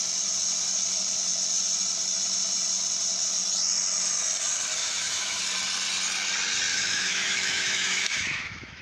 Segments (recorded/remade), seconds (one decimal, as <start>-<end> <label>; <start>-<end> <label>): 0.0-4.8 recorded; 4.8-5.4 remade; 5.4-6.7 recorded; 6.7-8.8 remade